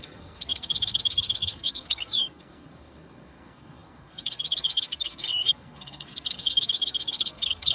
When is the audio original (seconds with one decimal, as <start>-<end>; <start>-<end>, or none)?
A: none